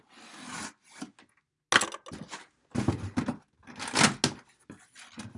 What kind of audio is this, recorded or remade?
recorded